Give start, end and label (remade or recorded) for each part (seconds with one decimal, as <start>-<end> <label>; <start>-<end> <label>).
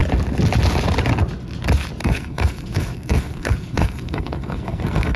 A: 0.0-2.0 recorded; 2.0-5.2 remade